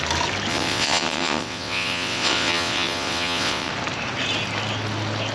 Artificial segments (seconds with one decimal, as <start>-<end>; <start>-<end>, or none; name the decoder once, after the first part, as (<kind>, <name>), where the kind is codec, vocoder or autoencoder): 0.5-3.7 (vocoder, WaveNeXt)